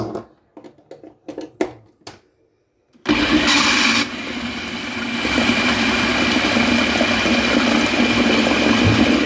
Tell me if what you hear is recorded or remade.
recorded